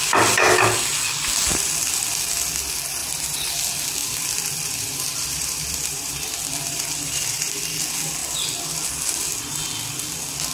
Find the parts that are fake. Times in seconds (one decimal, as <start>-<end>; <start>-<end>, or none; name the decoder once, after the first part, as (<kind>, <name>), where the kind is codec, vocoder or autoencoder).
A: 3.0-3.5 (vocoder, BigVGAN v2); 4.0-7.7